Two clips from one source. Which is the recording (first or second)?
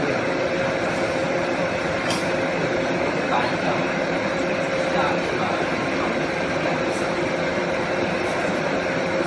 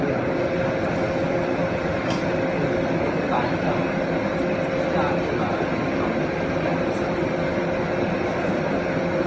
second